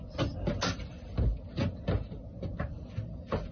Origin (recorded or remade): recorded